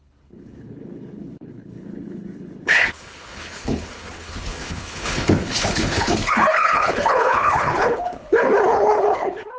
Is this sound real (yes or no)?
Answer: no